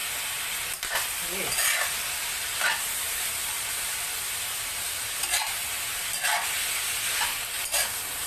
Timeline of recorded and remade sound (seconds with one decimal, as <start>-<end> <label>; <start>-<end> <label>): 0.0-3.4 recorded; 3.4-4.0 remade; 4.0-8.3 recorded